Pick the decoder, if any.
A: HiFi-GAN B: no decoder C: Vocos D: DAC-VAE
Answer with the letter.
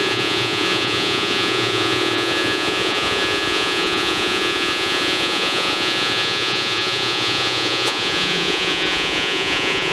C